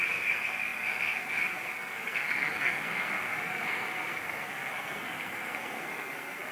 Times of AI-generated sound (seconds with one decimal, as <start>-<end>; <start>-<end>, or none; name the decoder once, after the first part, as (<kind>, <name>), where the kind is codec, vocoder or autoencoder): 0.0-6.5 (codec, SNAC)